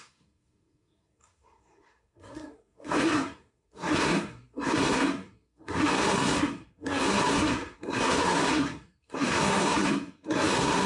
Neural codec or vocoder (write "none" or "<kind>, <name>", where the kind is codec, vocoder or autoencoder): codec, SNAC